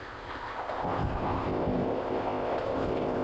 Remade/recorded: remade